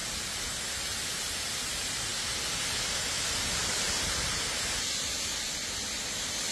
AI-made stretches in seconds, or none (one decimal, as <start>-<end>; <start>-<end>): none